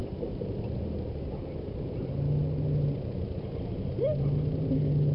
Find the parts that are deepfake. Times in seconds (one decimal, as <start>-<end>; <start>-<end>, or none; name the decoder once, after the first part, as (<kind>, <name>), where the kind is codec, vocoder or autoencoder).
none